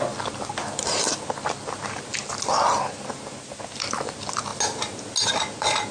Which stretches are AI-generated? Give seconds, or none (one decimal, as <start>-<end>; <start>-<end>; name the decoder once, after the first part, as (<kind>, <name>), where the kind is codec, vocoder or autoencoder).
none